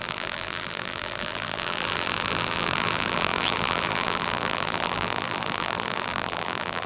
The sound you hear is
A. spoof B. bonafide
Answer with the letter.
A